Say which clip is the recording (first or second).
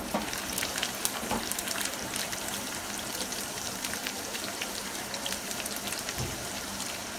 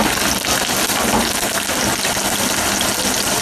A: second